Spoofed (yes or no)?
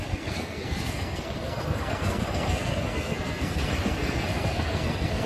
yes